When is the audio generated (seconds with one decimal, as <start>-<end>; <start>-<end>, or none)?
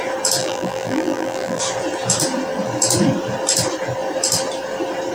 0.4-1.6